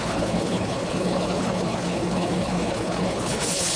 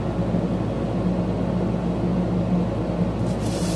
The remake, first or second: first